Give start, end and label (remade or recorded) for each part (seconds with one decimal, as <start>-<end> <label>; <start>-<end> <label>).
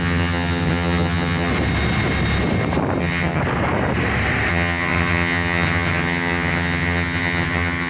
0.0-1.5 remade; 1.5-3.0 recorded; 3.0-3.4 remade; 3.4-4.5 recorded; 4.5-7.9 remade